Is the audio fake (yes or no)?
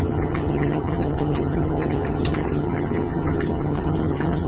yes